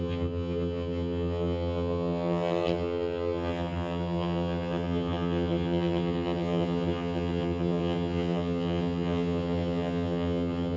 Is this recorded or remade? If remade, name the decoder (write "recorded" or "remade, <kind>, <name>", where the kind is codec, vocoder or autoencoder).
remade, vocoder, HiFi-GAN